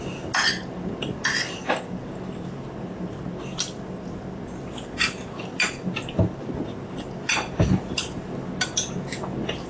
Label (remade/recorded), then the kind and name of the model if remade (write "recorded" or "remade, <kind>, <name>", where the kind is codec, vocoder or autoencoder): recorded